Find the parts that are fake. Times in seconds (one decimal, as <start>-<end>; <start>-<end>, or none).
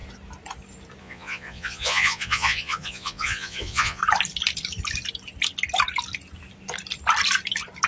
1.0-4.0